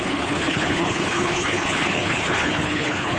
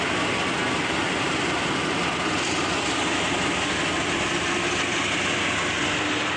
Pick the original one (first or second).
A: second